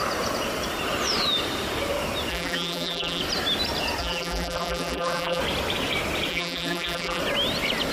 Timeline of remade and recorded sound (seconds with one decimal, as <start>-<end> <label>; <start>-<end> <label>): 0.0-2.3 recorded; 2.3-3.2 remade; 3.2-4.0 recorded; 4.0-5.4 remade; 5.4-6.3 recorded; 6.3-7.2 remade; 7.2-7.9 recorded

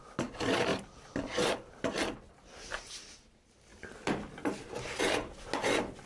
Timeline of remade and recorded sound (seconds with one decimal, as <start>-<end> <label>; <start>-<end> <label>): 0.0-0.7 recorded; 0.7-1.5 remade; 1.5-3.7 recorded; 3.7-5.0 remade; 5.0-6.1 recorded

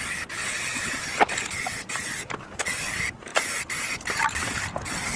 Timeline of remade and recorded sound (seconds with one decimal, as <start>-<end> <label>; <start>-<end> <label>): 0.0-0.7 recorded; 0.7-2.9 remade; 2.9-5.2 recorded

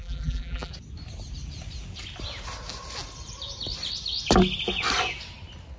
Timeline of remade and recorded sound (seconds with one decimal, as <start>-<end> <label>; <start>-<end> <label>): 0.0-0.7 remade; 0.7-5.8 recorded

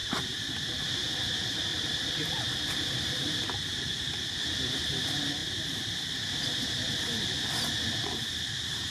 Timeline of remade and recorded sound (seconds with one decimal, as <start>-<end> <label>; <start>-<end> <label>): 0.0-0.5 remade; 0.5-1.7 recorded; 1.7-4.1 remade; 4.1-5.4 recorded; 5.4-6.4 remade; 6.4-8.9 recorded

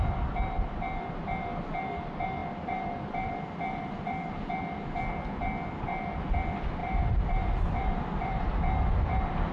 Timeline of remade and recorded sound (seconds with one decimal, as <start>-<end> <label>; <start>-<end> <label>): 0.0-2.4 recorded; 2.4-4.3 remade; 4.3-6.8 recorded; 6.8-8.4 remade; 8.4-9.5 recorded

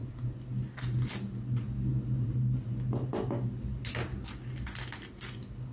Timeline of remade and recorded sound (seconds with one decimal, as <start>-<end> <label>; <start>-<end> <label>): 0.0-5.7 recorded

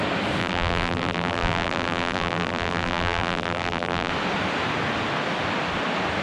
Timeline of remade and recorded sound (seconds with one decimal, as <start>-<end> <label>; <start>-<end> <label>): 0.0-0.4 recorded; 0.4-4.1 remade; 4.1-6.2 recorded